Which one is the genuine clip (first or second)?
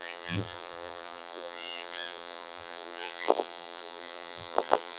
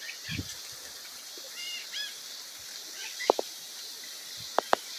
second